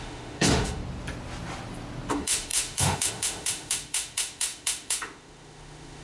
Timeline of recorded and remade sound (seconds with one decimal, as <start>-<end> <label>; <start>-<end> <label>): 0.0-0.8 remade; 0.8-2.1 recorded; 2.1-6.0 remade

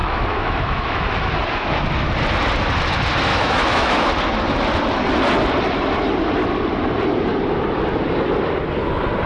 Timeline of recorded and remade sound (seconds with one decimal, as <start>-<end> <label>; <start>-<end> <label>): 0.0-1.3 remade; 1.3-3.3 recorded; 3.3-4.1 remade; 4.1-9.3 recorded

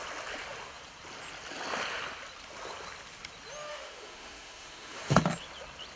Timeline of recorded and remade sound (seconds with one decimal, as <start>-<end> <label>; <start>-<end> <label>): 0.0-3.7 recorded; 3.7-5.2 remade; 5.2-6.0 recorded

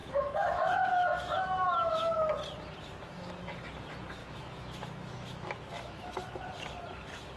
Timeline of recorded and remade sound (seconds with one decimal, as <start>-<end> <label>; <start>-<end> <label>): 0.0-2.3 remade; 2.3-4.2 recorded; 4.2-6.1 remade; 6.1-7.4 recorded

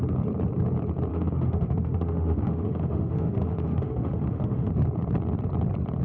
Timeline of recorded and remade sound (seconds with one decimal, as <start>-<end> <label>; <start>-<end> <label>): 0.0-1.1 recorded; 1.1-4.7 remade; 4.7-6.0 recorded